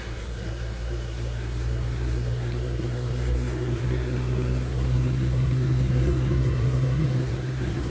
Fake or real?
fake